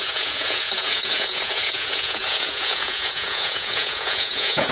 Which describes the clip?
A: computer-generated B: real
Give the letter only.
A